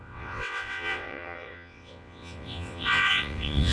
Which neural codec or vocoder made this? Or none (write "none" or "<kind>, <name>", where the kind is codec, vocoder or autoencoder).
vocoder, WaveNeXt